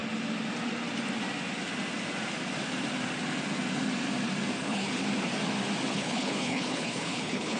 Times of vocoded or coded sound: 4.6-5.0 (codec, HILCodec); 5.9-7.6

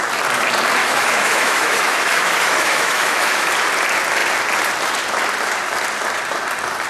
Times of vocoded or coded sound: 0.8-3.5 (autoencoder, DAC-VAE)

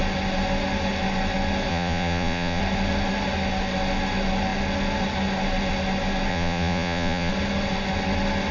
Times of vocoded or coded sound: 1.7-2.6 (vocoder, Vocos); 6.3-7.3

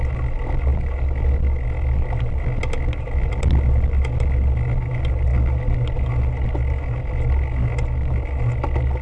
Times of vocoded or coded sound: none

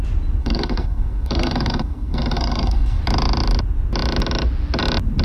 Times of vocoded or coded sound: 0.4-3.0 (codec, SNAC)